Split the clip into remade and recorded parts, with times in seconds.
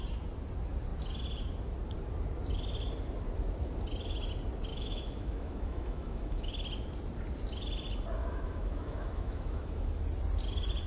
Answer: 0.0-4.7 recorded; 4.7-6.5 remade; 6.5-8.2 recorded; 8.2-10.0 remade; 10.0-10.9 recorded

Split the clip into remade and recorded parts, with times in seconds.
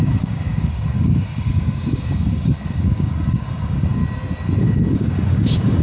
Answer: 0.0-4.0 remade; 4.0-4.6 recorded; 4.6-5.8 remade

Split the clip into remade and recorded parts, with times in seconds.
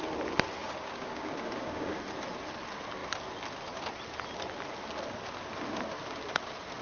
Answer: 0.0-0.6 recorded; 0.6-1.9 remade; 1.9-6.8 recorded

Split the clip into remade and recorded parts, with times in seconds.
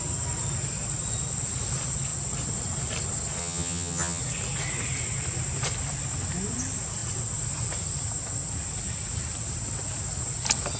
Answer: 0.0-3.4 recorded; 3.4-4.2 remade; 4.2-10.8 recorded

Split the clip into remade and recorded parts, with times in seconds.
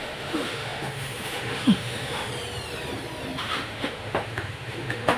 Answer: 0.0-2.3 remade; 2.3-3.4 recorded; 3.4-5.2 remade